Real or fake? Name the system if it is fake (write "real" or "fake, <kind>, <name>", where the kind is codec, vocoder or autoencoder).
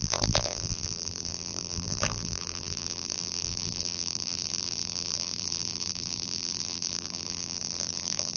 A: fake, vocoder, BigVGAN v2